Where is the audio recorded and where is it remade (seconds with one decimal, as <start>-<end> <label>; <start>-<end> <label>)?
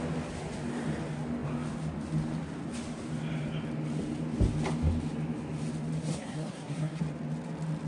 0.0-6.1 recorded; 6.1-7.0 remade; 7.0-7.9 recorded